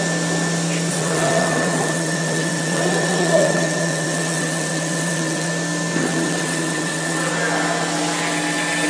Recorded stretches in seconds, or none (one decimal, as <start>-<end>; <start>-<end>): 0.0-0.9; 5.5-6.0; 7.3-8.9